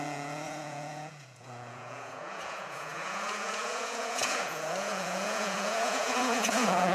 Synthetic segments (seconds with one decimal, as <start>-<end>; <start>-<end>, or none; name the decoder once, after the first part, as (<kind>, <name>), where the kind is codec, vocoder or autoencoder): 0.0-6.9 (vocoder, Vocos)